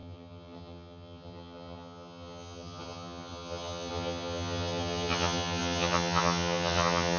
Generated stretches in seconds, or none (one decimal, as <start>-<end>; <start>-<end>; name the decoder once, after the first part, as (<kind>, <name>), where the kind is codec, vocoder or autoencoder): 0.0-7.2 (vocoder, HiFi-GAN)